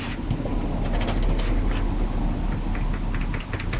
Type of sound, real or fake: real